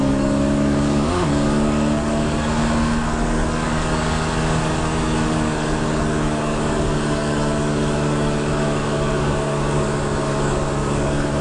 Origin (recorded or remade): remade